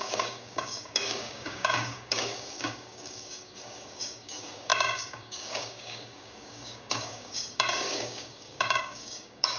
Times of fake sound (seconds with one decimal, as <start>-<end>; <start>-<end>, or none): 0.0-9.6